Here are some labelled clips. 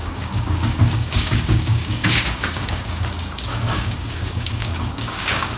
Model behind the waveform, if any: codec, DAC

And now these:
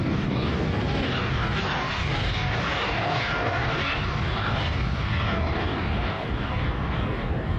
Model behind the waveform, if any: codec, DAC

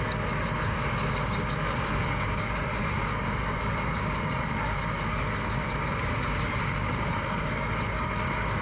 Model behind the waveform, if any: codec, DAC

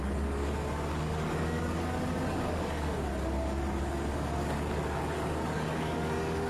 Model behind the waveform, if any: codec, DAC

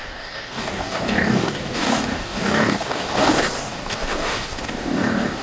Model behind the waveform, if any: codec, DAC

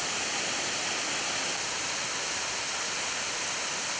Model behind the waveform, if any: none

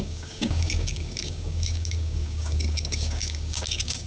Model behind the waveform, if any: codec, DAC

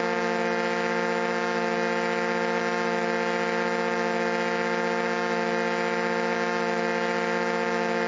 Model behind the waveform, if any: none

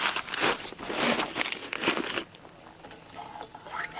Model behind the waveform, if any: none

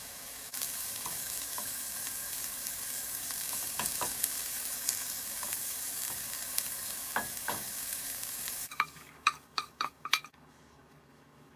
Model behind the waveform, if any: codec, DAC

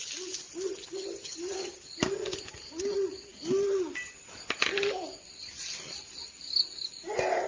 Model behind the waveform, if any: none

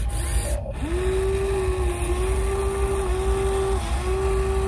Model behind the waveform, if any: none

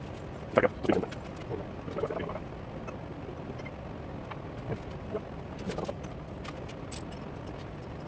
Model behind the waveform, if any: none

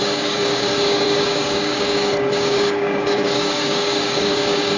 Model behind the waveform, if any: codec, DAC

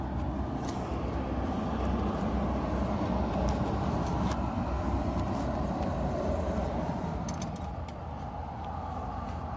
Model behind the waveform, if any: none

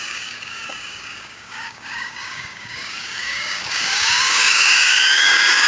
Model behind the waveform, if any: codec, DAC